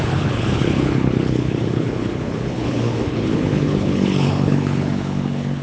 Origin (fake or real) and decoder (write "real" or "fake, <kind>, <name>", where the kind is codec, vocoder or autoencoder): fake, codec, HILCodec